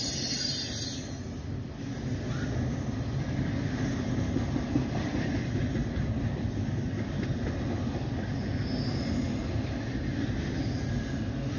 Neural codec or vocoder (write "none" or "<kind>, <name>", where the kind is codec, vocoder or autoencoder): none